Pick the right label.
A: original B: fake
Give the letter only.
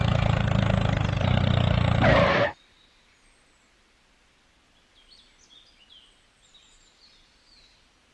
A